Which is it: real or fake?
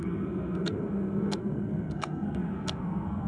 fake